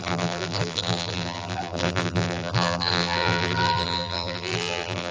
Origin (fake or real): fake